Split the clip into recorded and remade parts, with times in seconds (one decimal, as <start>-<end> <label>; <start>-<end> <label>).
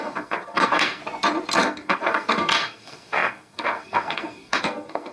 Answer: 0.0-1.0 remade; 1.0-1.6 recorded; 1.6-5.1 remade